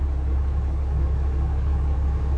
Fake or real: fake